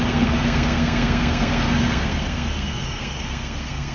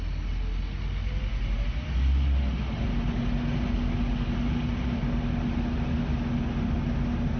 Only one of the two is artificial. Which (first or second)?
first